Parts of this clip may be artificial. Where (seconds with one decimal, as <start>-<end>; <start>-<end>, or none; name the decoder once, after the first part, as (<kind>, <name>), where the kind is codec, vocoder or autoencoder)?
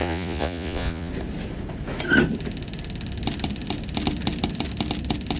0.0-1.1 (vocoder, Vocos)